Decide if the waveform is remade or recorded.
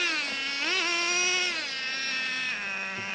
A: recorded